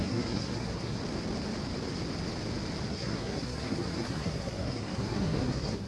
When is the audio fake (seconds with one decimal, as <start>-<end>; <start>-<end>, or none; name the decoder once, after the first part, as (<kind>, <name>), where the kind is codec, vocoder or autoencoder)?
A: 0.0-1.0 (codec, SNAC); 2.9-5.9